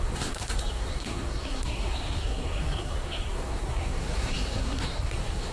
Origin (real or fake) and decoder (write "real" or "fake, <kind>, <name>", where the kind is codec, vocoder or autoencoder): fake, codec, SNAC